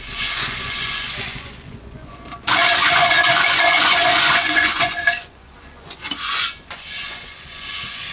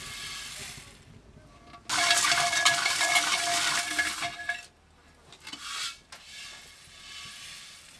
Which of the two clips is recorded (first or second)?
second